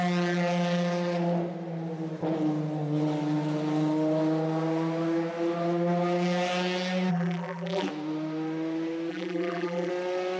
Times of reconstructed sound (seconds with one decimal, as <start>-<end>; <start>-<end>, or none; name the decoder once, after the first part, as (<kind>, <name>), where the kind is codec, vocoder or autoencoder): 7.1-7.9 (vocoder, BigVGAN v2); 9.1-9.9